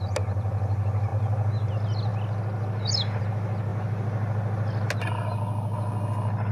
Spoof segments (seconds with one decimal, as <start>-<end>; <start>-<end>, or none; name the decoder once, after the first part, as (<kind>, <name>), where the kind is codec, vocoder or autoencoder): none